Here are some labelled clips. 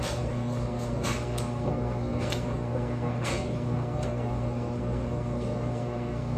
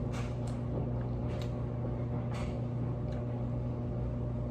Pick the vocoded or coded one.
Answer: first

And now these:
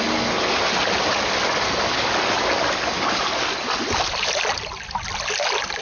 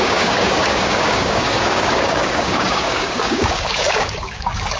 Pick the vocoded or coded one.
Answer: second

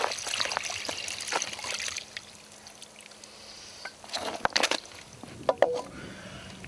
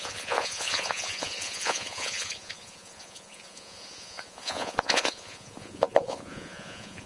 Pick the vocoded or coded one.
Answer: second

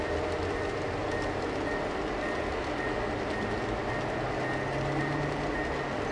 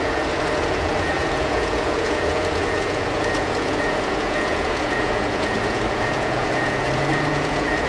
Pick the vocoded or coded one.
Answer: second